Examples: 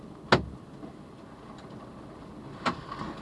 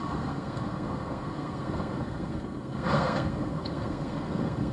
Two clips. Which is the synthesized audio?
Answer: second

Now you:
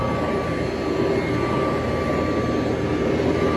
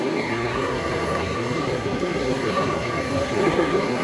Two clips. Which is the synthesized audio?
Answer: second